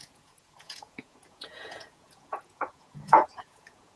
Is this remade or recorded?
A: remade